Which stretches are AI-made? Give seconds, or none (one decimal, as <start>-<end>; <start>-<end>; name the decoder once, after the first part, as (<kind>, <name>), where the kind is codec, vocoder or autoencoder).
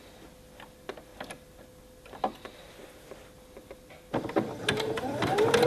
none